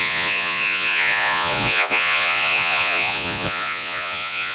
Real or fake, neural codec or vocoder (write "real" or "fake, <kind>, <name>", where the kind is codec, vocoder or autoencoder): fake, vocoder, Vocos